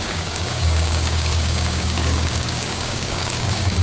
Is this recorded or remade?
remade